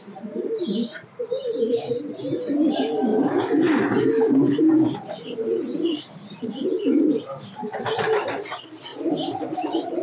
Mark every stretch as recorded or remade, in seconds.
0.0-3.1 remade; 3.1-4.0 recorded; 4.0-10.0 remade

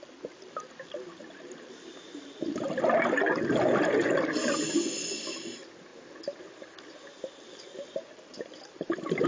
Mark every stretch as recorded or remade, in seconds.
0.0-9.3 recorded

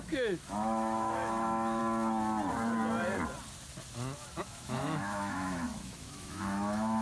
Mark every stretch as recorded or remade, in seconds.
0.0-1.8 remade; 1.8-4.4 recorded; 4.4-7.0 remade

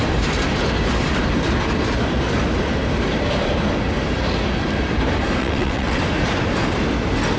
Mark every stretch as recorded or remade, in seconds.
0.0-5.4 recorded; 5.4-6.0 remade; 6.0-7.4 recorded